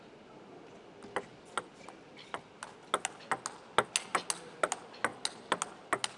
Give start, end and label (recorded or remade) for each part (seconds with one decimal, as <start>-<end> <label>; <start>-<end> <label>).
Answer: 0.0-6.2 recorded